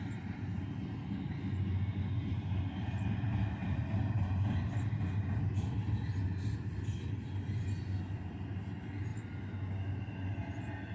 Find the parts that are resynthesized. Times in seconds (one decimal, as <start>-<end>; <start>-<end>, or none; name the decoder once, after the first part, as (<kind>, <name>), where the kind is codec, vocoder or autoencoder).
none